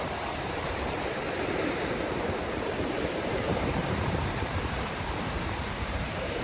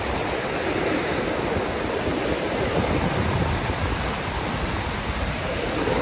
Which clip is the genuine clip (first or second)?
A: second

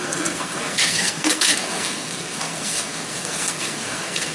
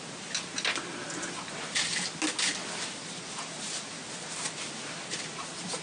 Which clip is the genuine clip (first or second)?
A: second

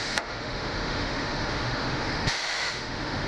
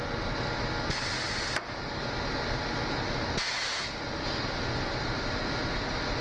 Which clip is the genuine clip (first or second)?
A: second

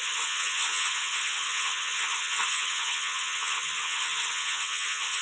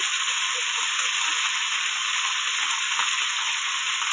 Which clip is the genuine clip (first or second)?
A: second